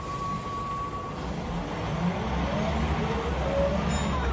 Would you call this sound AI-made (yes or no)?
no